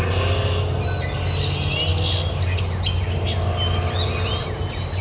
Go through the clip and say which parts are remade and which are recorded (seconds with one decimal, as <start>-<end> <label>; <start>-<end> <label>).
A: 0.0-5.0 recorded